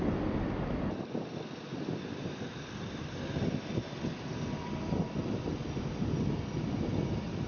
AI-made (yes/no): yes